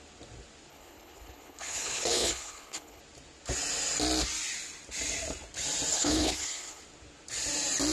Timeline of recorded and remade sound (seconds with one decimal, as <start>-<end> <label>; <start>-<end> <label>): 0.0-0.7 recorded; 0.7-3.0 remade; 3.0-5.9 recorded; 5.9-6.8 remade; 6.8-7.9 recorded